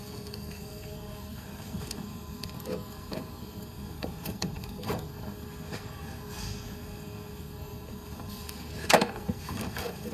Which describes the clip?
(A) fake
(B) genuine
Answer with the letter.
A